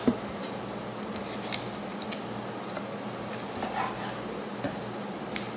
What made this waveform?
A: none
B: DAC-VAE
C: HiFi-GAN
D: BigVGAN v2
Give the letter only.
A